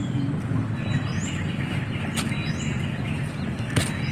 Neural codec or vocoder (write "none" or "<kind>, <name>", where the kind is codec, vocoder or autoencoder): none